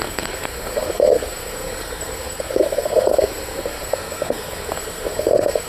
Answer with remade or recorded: remade